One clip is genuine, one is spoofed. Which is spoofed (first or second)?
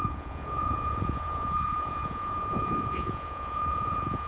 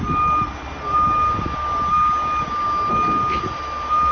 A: first